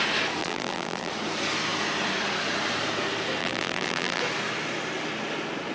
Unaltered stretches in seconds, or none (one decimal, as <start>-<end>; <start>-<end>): 0.0-0.4; 1.1-3.4; 4.2-5.7